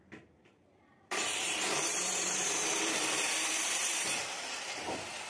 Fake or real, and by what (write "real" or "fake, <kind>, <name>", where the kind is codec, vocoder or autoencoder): fake, vocoder, BigVGAN v2